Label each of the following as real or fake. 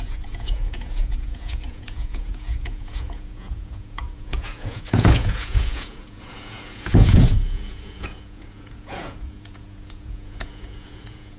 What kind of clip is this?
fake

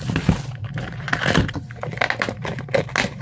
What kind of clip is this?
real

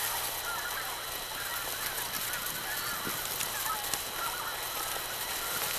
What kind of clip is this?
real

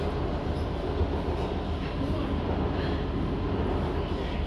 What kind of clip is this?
real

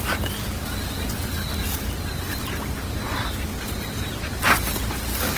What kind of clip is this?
real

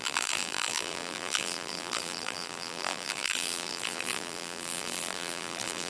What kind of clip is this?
fake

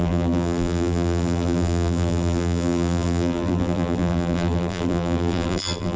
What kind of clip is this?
fake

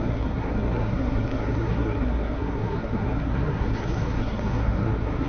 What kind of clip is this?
fake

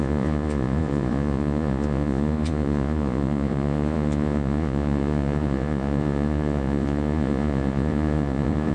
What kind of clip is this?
fake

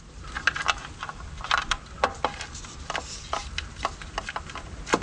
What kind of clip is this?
real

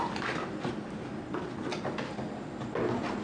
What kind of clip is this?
real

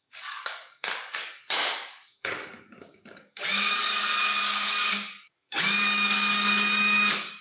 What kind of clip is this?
fake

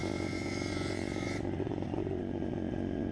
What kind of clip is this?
fake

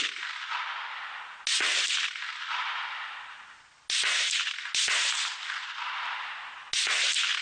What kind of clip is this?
real